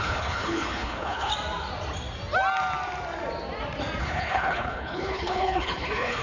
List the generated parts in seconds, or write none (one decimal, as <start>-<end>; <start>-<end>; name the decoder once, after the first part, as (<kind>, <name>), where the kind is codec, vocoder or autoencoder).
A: 0.0-1.3 (codec, HILCodec); 4.0-6.2